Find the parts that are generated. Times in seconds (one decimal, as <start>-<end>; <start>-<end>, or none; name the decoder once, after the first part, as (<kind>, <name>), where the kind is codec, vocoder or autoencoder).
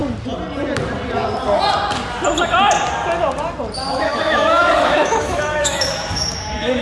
3.8-6.8 (autoencoder, DAC-VAE)